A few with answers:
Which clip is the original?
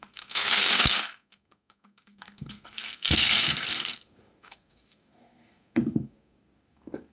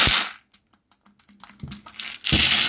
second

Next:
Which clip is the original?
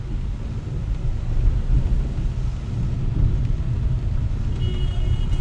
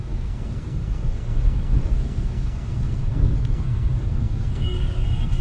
first